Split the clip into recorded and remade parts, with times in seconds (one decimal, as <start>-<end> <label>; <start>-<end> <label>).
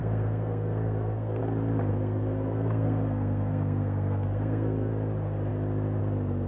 0.0-1.4 remade; 1.4-1.9 recorded; 1.9-4.9 remade; 4.9-6.5 recorded